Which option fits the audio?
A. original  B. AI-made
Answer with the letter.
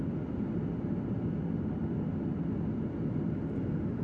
A